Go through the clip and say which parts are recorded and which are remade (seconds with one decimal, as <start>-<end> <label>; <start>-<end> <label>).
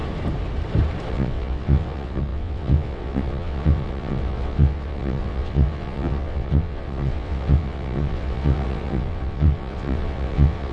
0.0-1.1 recorded; 1.1-10.7 remade